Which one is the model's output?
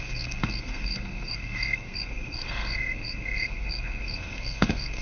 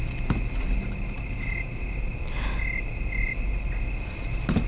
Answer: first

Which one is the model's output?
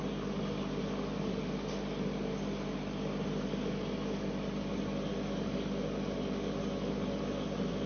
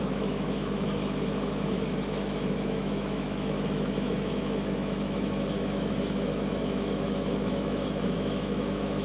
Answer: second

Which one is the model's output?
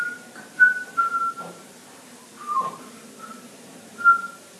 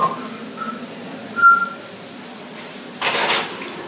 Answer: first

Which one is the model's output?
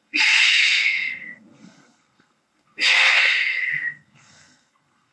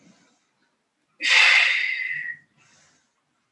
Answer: first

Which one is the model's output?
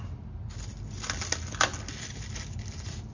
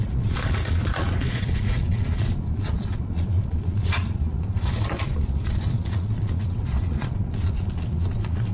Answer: second